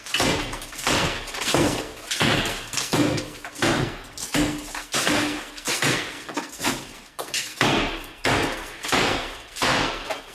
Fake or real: fake